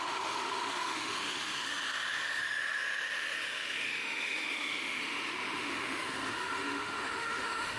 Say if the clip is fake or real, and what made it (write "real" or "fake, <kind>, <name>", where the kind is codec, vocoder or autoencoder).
fake, autoencoder, DAC-VAE